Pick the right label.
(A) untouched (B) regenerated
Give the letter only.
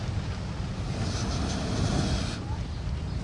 A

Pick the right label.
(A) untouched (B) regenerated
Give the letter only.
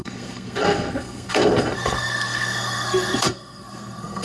B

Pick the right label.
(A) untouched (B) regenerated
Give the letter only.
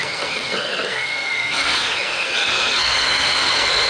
B